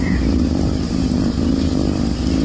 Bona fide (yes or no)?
yes